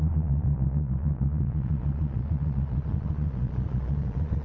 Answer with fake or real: fake